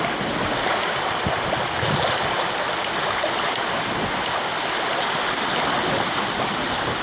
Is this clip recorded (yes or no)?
yes